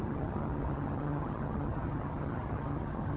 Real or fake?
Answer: fake